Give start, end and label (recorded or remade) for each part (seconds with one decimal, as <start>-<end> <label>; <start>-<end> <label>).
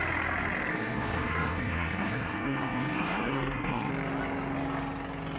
0.0-0.7 recorded; 0.7-3.9 remade; 3.9-5.4 recorded